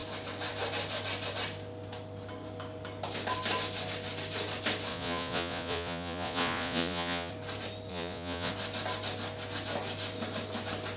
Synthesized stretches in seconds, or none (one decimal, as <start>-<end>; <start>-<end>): 4.9-7.3; 7.9-8.5